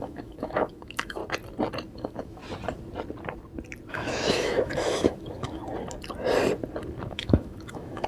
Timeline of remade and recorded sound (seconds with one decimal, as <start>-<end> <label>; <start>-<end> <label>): 0.0-1.2 remade; 1.2-1.9 recorded; 1.9-2.4 remade; 2.4-3.9 recorded; 3.9-5.6 remade; 5.6-7.1 recorded; 7.1-8.1 remade